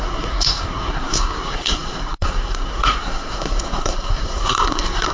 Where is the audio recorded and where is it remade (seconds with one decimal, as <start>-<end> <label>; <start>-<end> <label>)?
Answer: 0.0-5.1 remade